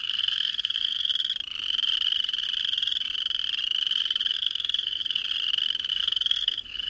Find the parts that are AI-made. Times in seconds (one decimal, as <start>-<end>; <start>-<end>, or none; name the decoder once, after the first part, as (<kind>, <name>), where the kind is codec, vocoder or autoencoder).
0.0-1.1 (codec, SNAC); 4.3-5.2; 5.9-6.9